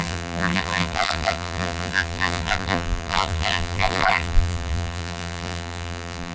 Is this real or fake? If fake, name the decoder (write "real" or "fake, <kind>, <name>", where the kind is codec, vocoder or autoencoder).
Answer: fake, vocoder, BigVGAN v2